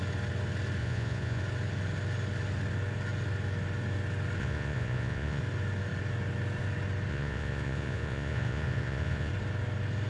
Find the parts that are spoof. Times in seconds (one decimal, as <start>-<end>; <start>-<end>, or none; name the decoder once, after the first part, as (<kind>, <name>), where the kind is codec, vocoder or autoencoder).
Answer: 0.8-1.4 (vocoder, Vocos); 4.4-5.4; 7.1-9.3